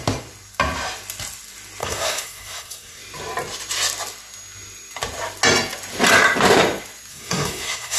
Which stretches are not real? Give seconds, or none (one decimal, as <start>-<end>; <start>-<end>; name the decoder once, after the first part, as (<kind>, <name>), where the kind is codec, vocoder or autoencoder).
1.8-3.0 (codec, SNAC); 7.1-8.0